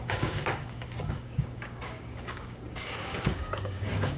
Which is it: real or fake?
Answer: fake